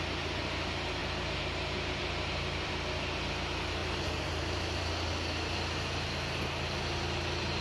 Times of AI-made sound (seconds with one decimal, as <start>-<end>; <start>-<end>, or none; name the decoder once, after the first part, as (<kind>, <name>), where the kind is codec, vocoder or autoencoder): 1.0-2.7 (vocoder, BigVGAN v2); 3.8-4.8